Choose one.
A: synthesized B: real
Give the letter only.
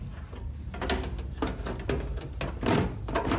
B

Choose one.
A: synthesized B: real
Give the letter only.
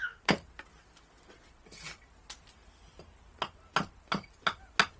B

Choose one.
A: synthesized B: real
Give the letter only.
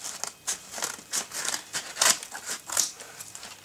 B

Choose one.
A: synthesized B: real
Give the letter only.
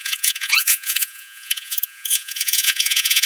A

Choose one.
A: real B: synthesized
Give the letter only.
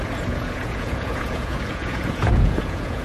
B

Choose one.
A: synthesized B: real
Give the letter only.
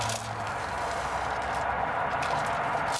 B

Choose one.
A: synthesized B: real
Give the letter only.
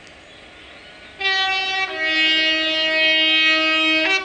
B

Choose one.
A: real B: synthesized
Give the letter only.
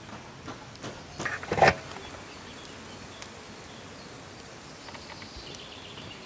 A